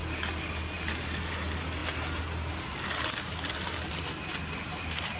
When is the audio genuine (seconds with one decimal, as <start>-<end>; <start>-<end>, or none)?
0.0-5.2